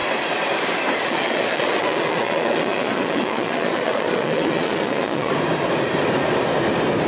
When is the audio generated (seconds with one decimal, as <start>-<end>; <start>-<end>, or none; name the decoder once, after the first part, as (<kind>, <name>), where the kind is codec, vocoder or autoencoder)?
1.0-5.3 (vocoder, Vocos)